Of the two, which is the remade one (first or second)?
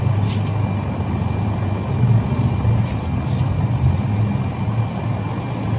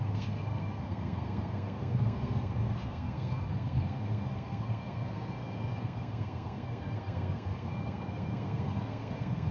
second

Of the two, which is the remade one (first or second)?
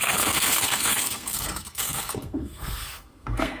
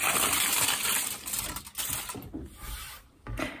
first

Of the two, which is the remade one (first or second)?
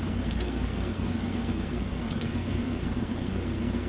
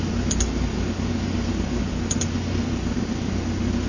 first